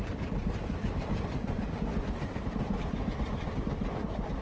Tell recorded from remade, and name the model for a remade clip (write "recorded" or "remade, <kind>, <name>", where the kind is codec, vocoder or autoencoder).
remade, vocoder, BigVGAN v2